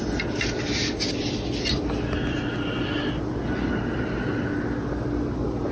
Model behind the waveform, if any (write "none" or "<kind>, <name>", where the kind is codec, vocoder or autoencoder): none